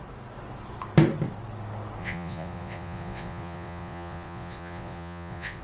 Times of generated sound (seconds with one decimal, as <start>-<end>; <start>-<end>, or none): 2.0-5.6